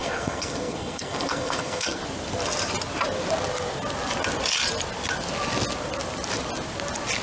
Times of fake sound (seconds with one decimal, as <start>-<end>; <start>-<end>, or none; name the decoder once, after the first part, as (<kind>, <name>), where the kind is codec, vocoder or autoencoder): 0.0-2.0 (codec, SNAC)